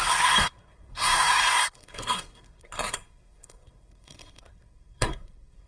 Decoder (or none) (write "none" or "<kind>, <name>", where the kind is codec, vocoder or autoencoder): codec, SNAC